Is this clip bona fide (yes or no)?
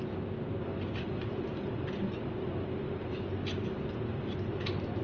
yes